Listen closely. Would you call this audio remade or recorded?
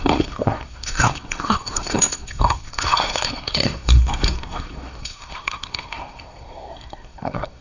remade